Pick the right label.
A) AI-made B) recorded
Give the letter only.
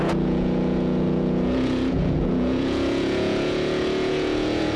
A